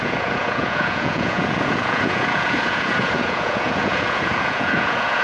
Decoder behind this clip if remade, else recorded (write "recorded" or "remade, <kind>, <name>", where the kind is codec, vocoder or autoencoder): remade, vocoder, Vocos